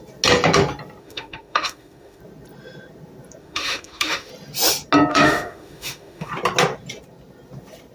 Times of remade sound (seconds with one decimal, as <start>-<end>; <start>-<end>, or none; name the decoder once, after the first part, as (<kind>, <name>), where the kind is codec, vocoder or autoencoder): 1.0-2.2 (autoencoder, DAC-VAE); 3.4-4.3; 5.1-6.3